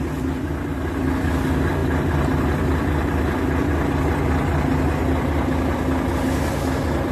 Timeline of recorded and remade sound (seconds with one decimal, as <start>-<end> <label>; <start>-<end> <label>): 0.0-7.1 recorded